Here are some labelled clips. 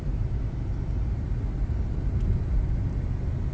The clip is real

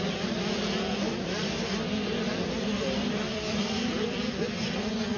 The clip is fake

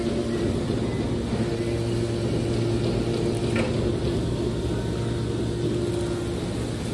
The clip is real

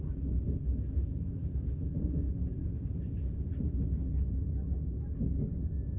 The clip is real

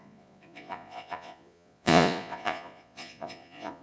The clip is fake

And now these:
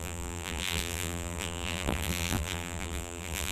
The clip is fake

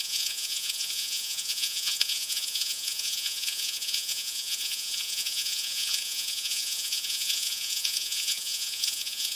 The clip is fake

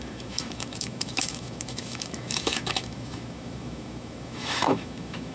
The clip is fake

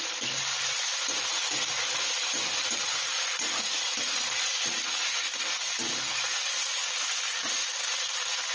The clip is real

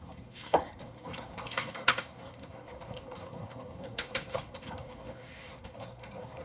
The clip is fake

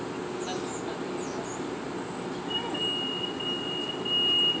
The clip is real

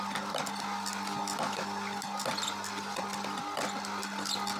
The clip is real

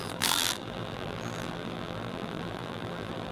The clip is fake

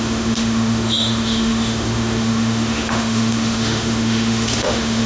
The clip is fake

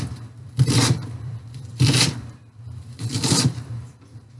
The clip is fake